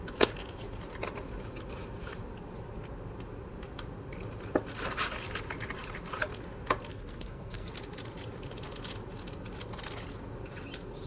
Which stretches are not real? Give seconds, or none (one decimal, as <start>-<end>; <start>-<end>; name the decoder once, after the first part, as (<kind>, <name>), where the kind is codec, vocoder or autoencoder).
6.9-7.7 (codec, SNAC)